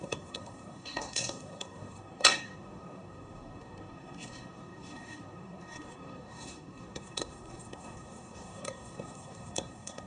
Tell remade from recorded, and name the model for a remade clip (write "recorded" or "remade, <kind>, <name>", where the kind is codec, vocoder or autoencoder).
remade, codec, SNAC